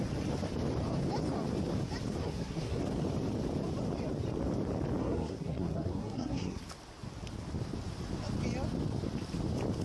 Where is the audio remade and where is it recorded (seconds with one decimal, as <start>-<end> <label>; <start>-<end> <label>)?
0.0-2.2 recorded; 2.2-2.8 remade; 2.8-5.0 recorded; 5.0-6.6 remade; 6.6-9.8 recorded